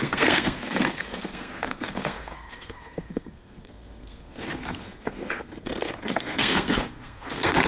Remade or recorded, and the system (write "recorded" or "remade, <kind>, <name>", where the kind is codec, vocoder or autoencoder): remade, codec, SNAC